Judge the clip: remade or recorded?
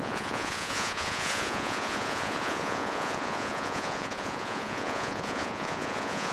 remade